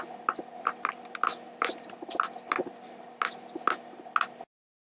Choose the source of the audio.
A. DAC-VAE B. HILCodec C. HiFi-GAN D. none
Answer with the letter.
D